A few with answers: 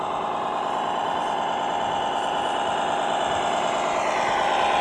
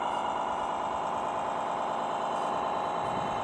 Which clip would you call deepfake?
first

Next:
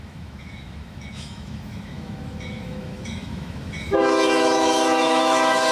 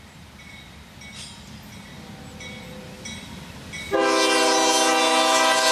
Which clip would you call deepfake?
first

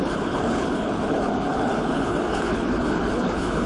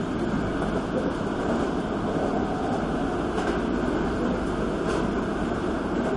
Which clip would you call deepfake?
first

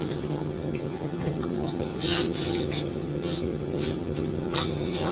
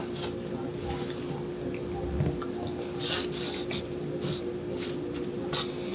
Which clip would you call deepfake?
first